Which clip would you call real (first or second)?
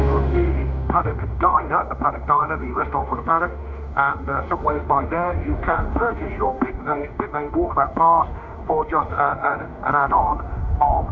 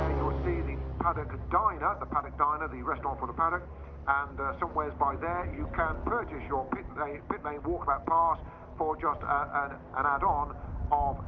second